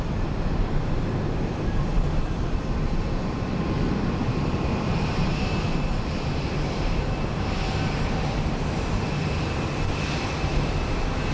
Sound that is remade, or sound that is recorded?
remade